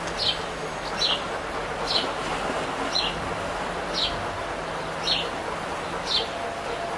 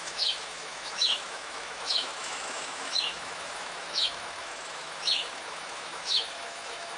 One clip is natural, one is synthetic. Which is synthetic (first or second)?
second